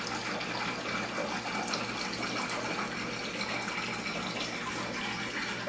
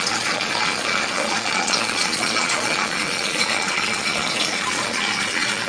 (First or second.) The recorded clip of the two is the first